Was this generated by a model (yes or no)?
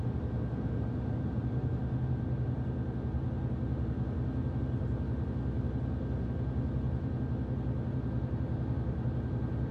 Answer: no